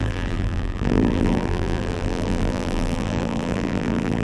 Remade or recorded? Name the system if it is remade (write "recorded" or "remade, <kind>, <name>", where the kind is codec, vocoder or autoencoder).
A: remade, vocoder, BigVGAN v2